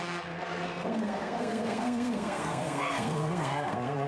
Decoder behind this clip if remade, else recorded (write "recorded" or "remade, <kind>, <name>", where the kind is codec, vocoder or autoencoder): remade, codec, SNAC